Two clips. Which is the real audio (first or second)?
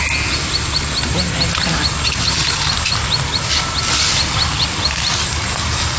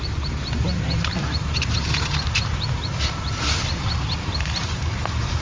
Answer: first